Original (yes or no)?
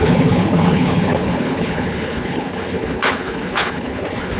no